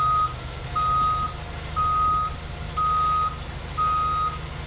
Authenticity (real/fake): real